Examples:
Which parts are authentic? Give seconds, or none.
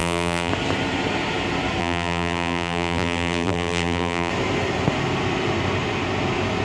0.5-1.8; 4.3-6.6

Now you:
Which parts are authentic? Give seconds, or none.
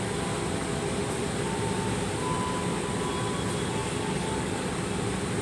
0.0-3.8; 4.7-5.4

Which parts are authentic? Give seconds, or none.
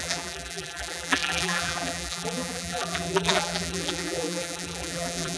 none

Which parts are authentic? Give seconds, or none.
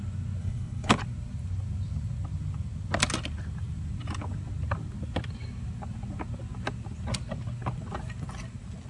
0.0-0.4; 1.0-8.9